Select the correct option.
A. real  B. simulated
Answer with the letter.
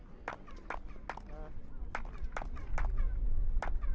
A